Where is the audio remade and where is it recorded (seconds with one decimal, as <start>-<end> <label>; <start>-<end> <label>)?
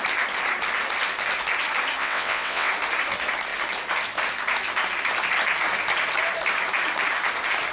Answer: 0.0-2.0 recorded; 2.0-2.7 remade; 2.7-7.7 recorded